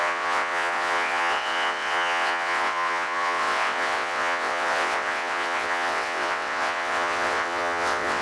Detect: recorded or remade remade